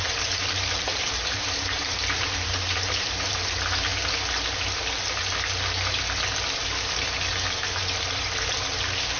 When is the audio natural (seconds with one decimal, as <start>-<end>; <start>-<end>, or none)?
3.9-9.2